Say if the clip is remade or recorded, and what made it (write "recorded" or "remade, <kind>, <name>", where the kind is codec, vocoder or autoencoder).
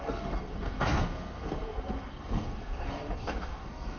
remade, codec, SNAC